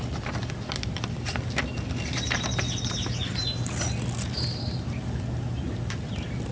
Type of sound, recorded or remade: recorded